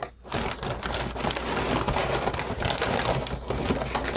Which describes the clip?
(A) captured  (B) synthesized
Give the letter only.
A